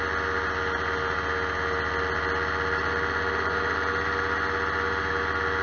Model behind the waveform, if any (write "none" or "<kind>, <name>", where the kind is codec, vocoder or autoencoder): none